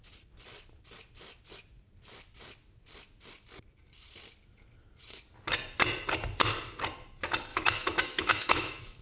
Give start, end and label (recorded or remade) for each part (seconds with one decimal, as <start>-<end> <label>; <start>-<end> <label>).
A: 0.0-7.5 recorded; 7.5-9.0 remade